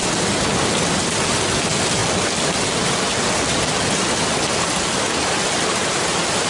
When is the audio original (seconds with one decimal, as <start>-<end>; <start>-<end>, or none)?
0.0-6.5